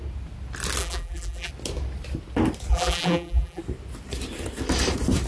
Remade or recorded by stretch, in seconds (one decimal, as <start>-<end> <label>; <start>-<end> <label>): 0.0-0.8 recorded; 0.8-1.5 remade; 1.5-2.7 recorded; 2.7-3.6 remade; 3.6-5.3 recorded